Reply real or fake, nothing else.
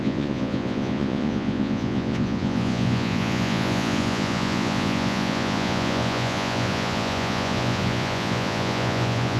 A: fake